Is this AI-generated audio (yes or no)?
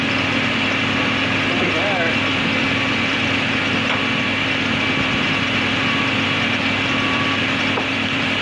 no